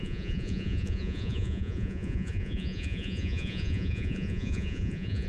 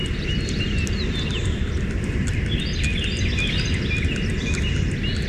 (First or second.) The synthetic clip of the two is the first